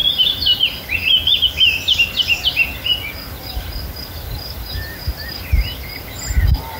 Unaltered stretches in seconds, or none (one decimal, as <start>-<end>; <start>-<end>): 0.0-6.8